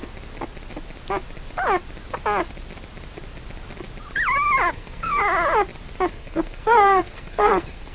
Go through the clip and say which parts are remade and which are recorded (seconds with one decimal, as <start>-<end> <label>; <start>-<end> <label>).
0.0-4.7 recorded; 4.7-5.2 remade; 5.2-6.1 recorded; 6.1-7.9 remade